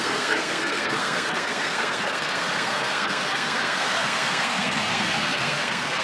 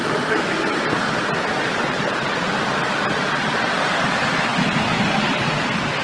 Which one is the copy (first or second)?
first